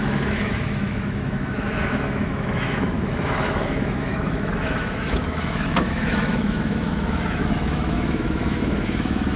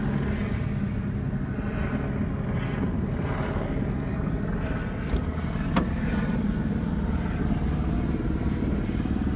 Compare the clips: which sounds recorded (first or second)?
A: second